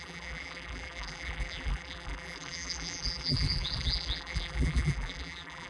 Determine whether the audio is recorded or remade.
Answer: remade